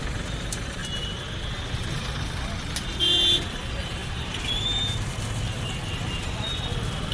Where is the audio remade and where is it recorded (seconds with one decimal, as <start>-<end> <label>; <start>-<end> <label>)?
0.0-0.8 remade; 0.8-3.0 recorded; 3.0-7.1 remade